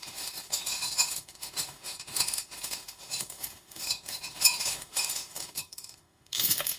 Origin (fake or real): fake